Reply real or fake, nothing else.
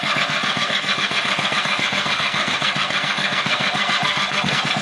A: fake